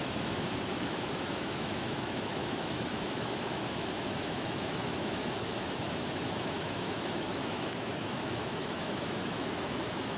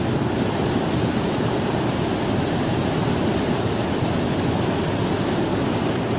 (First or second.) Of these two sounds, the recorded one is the second